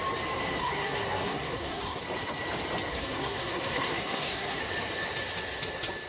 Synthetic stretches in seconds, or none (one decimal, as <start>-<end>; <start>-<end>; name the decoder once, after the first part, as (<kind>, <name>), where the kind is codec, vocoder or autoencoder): 0.6-2.0 (codec, SNAC); 2.9-4.6

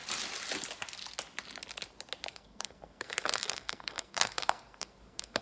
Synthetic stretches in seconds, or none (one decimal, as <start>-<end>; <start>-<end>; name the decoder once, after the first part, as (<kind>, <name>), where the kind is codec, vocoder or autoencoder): 2.3-5.4 (codec, SNAC)

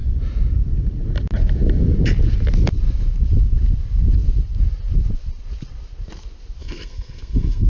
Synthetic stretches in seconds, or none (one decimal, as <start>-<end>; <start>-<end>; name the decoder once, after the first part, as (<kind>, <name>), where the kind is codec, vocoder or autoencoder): 6.6-7.7 (codec, SNAC)

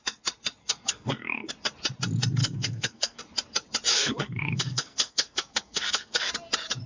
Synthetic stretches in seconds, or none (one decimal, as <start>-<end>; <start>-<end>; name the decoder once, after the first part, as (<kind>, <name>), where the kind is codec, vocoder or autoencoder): 0.6-1.5 (codec, SNAC); 2.4-3.2; 3.9-6.3

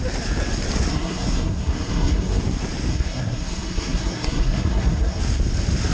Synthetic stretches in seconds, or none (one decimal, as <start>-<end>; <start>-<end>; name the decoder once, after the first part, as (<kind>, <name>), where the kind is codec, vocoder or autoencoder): 0.9-2.4 (codec, SNAC); 2.9-5.2

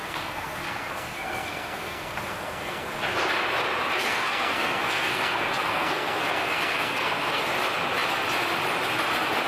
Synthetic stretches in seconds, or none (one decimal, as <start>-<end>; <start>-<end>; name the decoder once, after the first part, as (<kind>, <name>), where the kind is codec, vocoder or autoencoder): 0.0-2.9 (codec, SNAC); 4.1-7.4